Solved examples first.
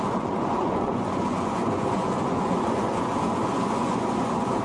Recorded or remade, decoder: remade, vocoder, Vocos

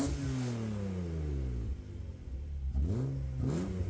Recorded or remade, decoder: recorded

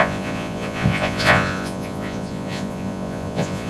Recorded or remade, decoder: remade, vocoder, Vocos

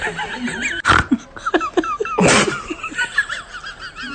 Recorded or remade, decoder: recorded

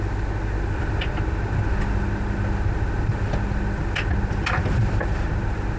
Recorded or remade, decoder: recorded